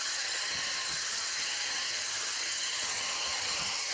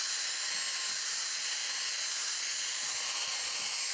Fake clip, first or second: first